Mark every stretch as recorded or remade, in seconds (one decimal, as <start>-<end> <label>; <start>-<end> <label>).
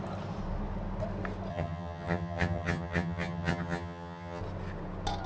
0.0-1.5 recorded; 1.5-4.4 remade; 4.4-5.3 recorded